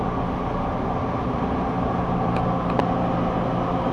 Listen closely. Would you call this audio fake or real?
real